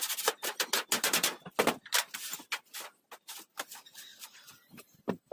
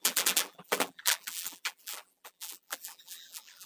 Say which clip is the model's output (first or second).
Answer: second